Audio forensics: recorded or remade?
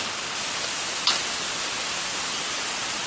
recorded